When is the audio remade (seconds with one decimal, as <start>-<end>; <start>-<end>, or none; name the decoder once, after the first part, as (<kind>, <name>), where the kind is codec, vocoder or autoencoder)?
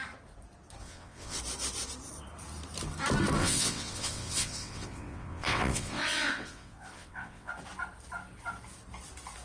0.8-1.4 (vocoder, WaveNeXt); 3.4-7.5